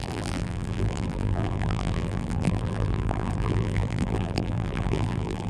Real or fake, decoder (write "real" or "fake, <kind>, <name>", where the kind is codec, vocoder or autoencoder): fake, vocoder, BigVGAN v2